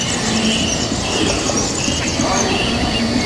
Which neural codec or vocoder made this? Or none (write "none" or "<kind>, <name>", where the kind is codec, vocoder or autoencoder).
none